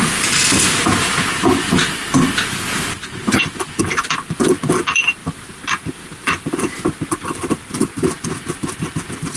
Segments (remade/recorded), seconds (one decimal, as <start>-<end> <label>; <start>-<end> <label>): 0.0-5.2 recorded; 5.2-6.6 remade; 6.6-9.4 recorded